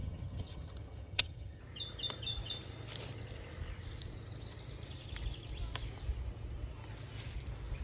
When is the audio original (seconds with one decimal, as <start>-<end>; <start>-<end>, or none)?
1.6-7.8